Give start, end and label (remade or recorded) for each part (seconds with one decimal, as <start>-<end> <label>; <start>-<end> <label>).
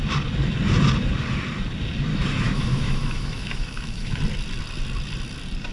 0.0-2.1 recorded; 2.1-4.2 remade; 4.2-5.7 recorded